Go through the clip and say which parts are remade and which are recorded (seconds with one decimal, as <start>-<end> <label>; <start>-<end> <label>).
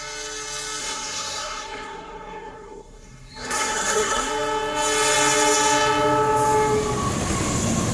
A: 0.0-0.8 recorded; 0.8-4.3 remade; 4.3-7.9 recorded